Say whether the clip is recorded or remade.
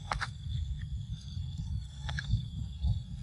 remade